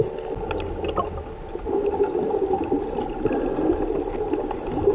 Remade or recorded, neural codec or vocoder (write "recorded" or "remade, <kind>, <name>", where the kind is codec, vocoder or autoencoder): recorded